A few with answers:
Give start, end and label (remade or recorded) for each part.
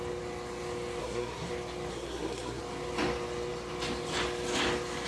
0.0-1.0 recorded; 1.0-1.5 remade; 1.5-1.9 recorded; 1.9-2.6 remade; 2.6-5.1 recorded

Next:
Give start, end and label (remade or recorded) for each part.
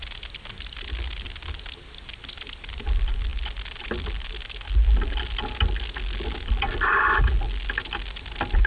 0.0-8.7 recorded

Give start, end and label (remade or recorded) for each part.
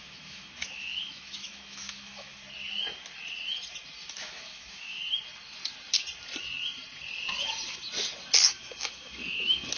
0.0-2.4 remade; 2.4-4.1 recorded; 4.1-5.0 remade; 5.0-8.4 recorded; 8.4-9.8 remade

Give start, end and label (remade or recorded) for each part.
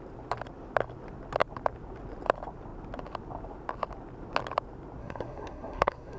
0.0-5.0 recorded; 5.0-6.2 remade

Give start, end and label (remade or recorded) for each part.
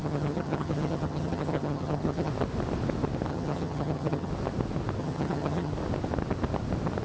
0.0-2.3 remade; 2.3-3.3 recorded; 3.3-4.3 remade; 4.3-5.0 recorded; 5.0-5.7 remade; 5.7-7.0 recorded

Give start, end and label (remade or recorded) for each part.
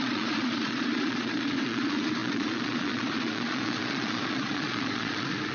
0.0-5.5 remade